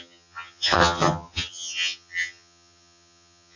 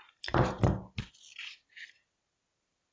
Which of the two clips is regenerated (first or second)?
first